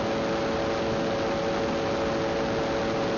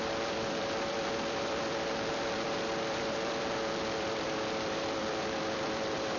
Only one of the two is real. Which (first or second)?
first